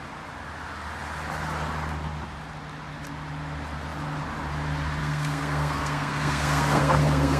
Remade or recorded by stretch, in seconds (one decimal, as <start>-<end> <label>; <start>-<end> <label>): 0.0-5.0 recorded; 5.0-7.4 remade